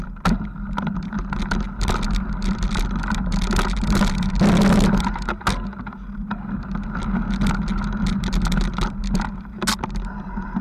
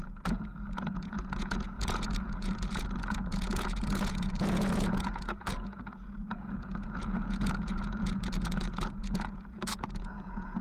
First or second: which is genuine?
first